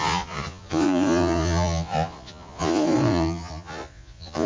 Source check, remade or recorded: remade